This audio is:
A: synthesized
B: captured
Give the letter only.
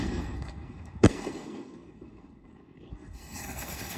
A